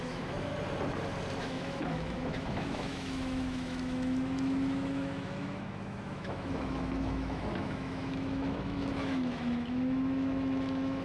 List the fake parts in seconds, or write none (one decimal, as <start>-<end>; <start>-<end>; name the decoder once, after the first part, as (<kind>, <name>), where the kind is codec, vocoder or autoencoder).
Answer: 0.0-0.5 (autoencoder, DAC-VAE); 1.4-11.0